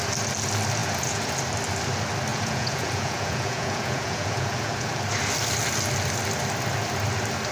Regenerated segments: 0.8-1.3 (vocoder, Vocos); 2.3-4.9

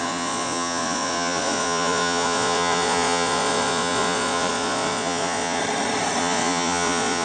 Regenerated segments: 0.0-5.6 (vocoder, Vocos); 6.2-7.2

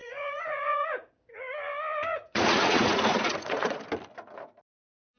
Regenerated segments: 0.0-1.1 (vocoder, Vocos); 2.1-3.8

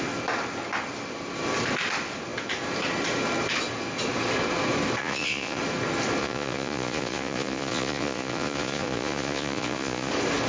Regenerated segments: 5.0-5.6 (vocoder, Vocos); 6.2-10.1

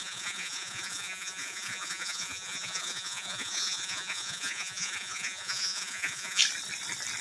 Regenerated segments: 0.0-6.4 (vocoder, Vocos)

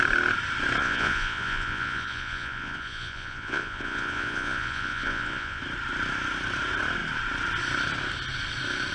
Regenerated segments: 0.8-5.6 (vocoder, Vocos)